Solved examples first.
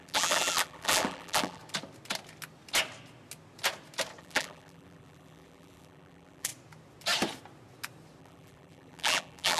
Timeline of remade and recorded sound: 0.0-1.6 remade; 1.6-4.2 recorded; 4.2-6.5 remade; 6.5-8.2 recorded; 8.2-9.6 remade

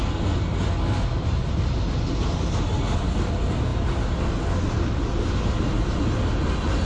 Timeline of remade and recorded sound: 0.0-1.2 recorded; 1.2-1.8 remade; 1.8-6.9 recorded